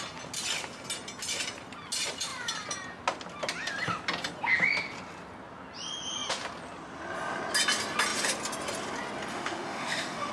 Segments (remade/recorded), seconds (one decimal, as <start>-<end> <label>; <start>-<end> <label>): 0.0-9.3 recorded; 9.3-10.3 remade